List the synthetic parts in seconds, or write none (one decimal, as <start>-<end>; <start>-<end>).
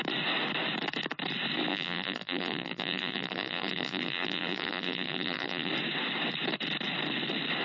1.7-5.7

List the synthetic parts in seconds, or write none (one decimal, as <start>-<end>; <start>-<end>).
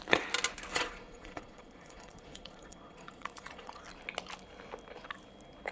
0.7-3.8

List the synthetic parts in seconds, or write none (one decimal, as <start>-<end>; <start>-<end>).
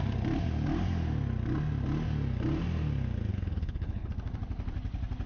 3.3-4.1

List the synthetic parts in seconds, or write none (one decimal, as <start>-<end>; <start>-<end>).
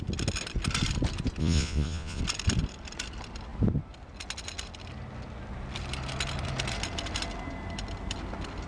1.4-2.2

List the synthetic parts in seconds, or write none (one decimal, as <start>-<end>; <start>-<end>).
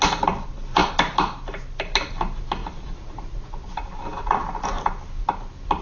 none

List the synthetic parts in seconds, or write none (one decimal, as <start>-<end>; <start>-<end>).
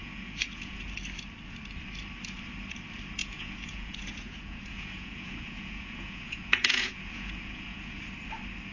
0.0-0.8; 3.2-8.0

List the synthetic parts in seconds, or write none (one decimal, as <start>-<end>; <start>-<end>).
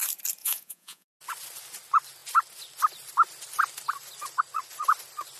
0.4-1.1